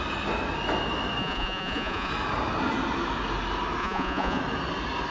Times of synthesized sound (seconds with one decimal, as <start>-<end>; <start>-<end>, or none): 1.2-2.1; 3.8-4.4